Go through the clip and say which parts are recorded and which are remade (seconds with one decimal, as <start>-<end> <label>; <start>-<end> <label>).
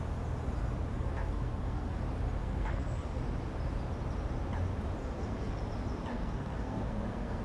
0.0-0.9 recorded; 0.9-2.0 remade; 2.0-2.4 recorded; 2.4-3.2 remade; 3.2-5.0 recorded; 5.0-5.6 remade; 5.6-6.1 recorded; 6.1-7.4 remade